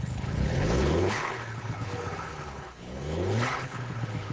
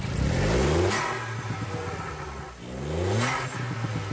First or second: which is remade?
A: first